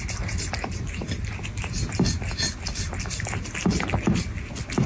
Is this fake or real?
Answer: real